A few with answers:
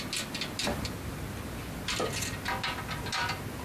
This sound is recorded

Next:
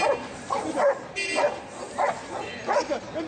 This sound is recorded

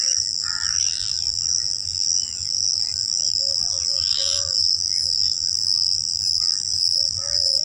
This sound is remade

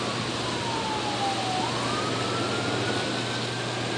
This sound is recorded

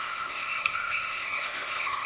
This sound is remade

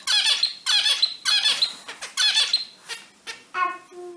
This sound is recorded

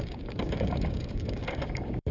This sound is remade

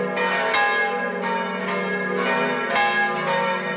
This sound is recorded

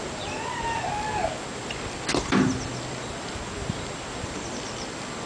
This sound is recorded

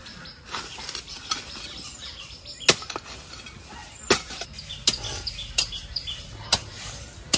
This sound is recorded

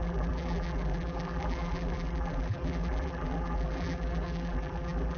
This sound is remade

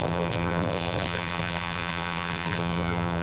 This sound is remade